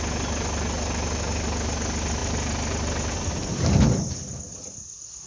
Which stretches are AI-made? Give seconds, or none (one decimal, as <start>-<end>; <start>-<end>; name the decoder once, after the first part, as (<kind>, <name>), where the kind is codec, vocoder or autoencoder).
none